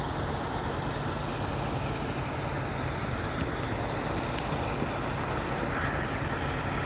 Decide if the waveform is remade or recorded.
recorded